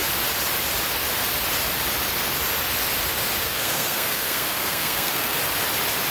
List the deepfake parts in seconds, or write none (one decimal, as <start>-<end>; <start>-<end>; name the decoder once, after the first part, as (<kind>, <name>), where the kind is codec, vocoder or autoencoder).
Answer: 3.4-5.4 (codec, SNAC)